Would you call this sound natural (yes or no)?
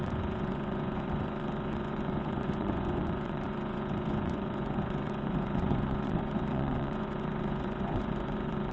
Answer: no